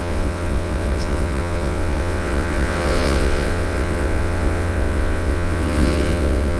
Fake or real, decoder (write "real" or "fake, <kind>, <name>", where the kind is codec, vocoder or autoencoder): fake, vocoder, WaveNeXt